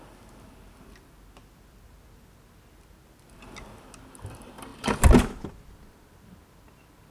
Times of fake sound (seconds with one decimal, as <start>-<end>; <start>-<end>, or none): none